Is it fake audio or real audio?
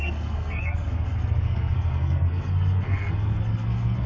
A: fake